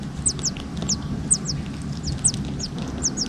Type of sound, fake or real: real